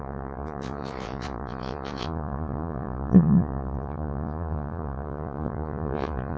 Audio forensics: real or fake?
fake